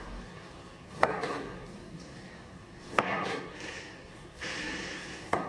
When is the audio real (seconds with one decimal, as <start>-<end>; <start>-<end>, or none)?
none